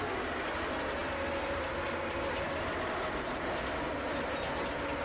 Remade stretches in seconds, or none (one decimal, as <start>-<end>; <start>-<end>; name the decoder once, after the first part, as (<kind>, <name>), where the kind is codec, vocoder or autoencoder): none